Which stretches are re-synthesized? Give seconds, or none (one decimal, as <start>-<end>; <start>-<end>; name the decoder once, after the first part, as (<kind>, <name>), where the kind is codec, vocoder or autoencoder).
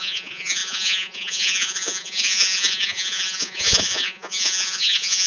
0.0-5.3 (vocoder, Vocos)